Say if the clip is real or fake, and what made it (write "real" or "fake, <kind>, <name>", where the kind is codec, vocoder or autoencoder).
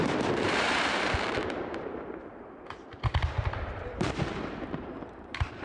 fake, vocoder, BigVGAN v2